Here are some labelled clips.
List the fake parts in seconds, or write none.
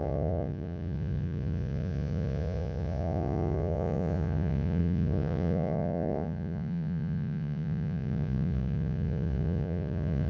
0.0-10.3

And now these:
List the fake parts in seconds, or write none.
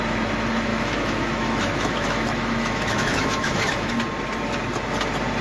0.7-3.9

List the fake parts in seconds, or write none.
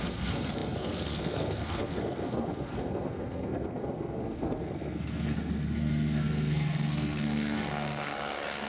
0.0-8.7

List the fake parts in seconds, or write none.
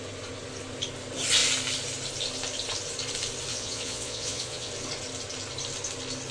3.5-4.7